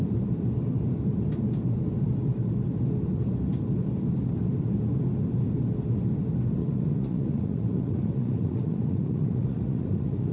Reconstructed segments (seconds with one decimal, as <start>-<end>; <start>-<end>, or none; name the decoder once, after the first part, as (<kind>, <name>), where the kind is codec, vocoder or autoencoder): 6.6-10.3 (vocoder, Vocos)